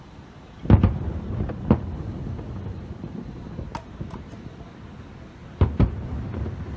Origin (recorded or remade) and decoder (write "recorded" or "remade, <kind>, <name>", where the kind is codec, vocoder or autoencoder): recorded